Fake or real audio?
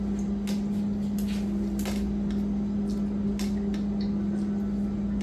real